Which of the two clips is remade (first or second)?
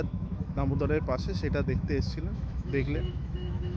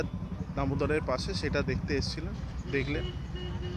first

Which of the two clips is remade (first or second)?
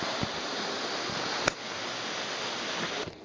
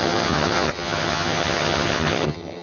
second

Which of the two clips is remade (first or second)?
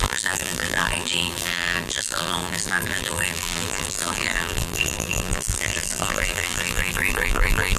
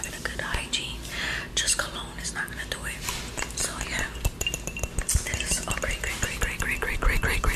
first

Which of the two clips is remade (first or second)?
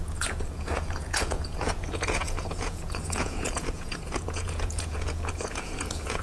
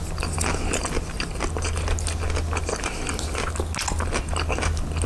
first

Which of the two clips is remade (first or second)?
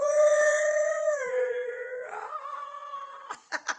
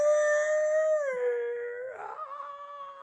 first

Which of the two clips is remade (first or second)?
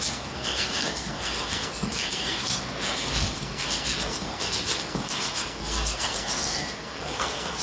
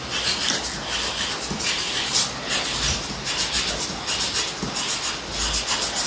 first